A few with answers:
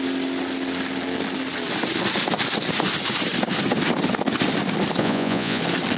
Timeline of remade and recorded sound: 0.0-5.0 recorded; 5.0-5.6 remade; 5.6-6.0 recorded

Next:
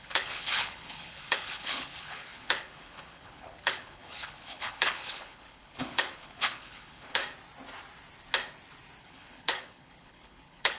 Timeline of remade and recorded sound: 0.0-7.2 remade; 7.2-9.0 recorded; 9.0-10.8 remade